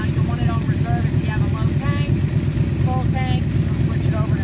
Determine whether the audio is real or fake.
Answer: real